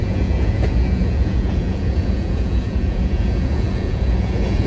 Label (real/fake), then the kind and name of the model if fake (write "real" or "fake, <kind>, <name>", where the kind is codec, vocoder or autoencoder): fake, vocoder, Vocos